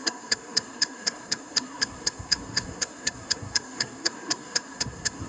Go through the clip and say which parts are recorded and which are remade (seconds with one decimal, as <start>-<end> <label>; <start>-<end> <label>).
0.0-5.3 remade

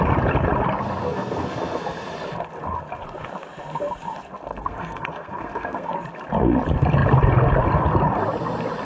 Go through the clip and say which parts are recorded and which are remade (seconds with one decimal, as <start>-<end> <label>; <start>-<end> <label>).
0.0-1.0 recorded; 1.0-1.8 remade; 1.8-4.5 recorded; 4.5-5.9 remade; 5.9-8.8 recorded